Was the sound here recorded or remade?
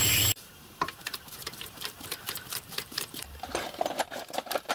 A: remade